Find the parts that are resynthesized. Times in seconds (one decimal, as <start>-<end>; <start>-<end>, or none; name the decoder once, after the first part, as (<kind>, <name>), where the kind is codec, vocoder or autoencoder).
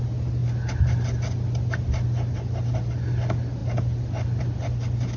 none